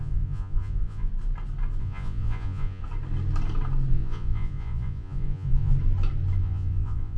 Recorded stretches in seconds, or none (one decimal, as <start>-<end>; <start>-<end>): 1.1-1.8; 2.8-3.9; 5.7-6.4